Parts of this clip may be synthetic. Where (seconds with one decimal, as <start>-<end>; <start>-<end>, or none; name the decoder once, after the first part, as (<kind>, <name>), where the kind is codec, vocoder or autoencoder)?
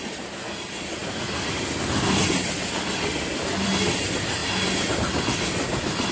none